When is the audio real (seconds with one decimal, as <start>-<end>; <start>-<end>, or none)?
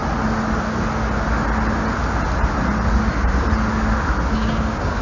0.0-4.4